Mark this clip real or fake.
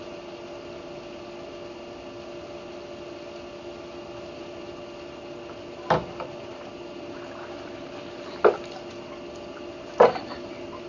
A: real